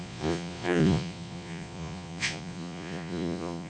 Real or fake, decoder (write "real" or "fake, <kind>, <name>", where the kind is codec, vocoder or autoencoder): fake, vocoder, Vocos